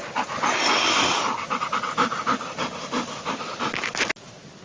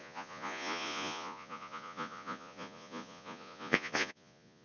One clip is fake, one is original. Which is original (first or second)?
first